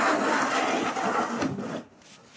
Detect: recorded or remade recorded